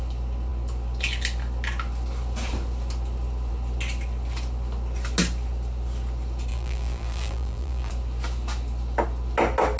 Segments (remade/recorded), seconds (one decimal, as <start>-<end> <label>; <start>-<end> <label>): 0.0-6.5 recorded; 6.5-7.9 remade; 7.9-9.8 recorded